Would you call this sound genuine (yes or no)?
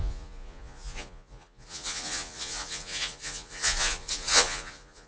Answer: no